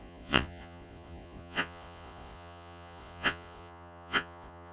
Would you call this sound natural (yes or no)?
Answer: no